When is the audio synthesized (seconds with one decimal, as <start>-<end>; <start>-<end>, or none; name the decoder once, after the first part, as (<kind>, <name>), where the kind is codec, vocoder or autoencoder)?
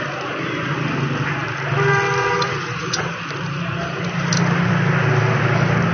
none